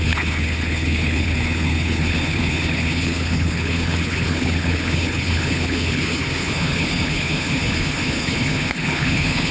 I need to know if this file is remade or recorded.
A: remade